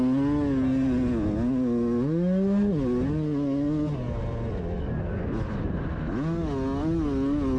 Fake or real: real